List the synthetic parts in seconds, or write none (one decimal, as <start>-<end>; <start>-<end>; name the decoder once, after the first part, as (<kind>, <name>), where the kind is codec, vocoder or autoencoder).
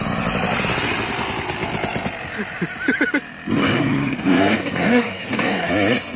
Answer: 3.6-5.7 (codec, SNAC)